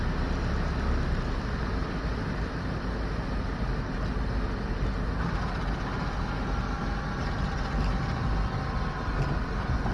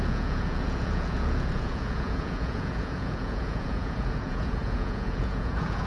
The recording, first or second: first